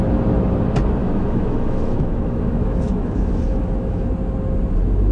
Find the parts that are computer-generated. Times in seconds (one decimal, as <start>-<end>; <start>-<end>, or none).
1.0-4.1